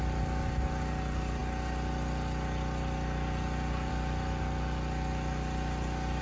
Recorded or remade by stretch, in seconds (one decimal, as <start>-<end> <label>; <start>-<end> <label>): 0.0-6.2 recorded